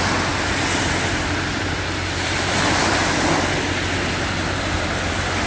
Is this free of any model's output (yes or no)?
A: yes